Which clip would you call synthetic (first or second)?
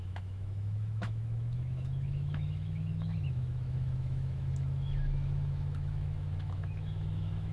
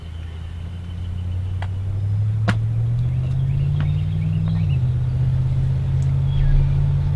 first